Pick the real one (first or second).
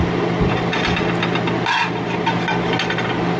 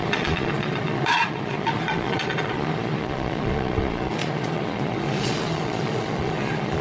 first